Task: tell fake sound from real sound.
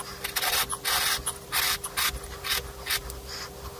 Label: real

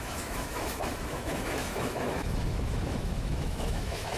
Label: fake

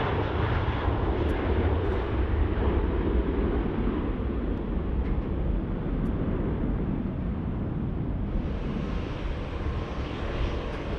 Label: real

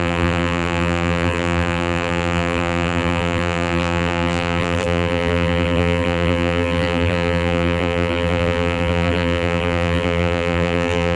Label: fake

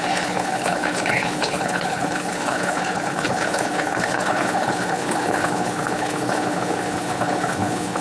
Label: fake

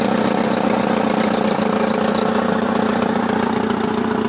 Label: real